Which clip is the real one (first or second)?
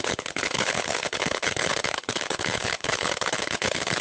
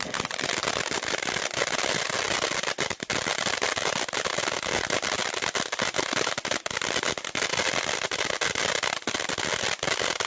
second